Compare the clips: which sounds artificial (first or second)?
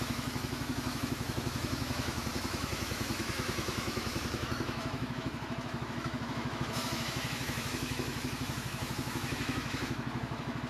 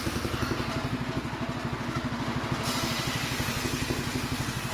first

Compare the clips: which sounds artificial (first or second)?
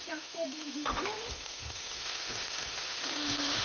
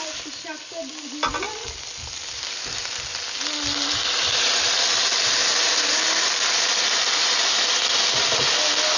first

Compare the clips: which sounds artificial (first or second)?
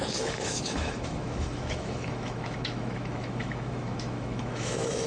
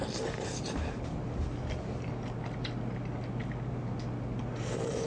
first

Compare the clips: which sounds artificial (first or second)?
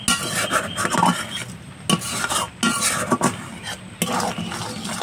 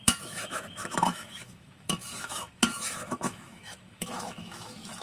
second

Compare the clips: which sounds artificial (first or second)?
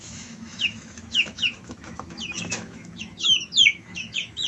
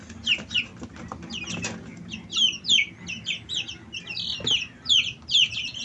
first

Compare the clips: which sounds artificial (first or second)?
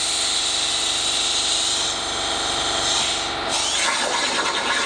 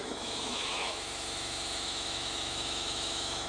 second